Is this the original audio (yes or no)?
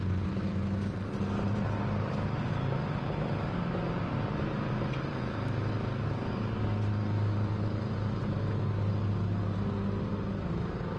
yes